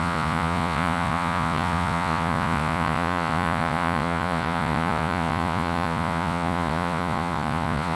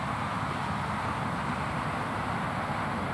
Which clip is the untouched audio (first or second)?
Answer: second